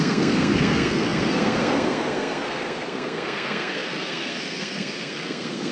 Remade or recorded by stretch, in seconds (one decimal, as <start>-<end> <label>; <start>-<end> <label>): 0.0-5.7 remade